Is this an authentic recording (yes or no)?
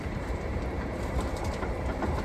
no